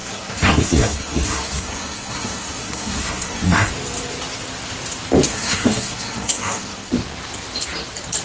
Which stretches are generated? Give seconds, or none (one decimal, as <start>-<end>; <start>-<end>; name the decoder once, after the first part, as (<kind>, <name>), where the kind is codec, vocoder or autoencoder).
0.0-3.7 (codec, SNAC); 5.3-6.9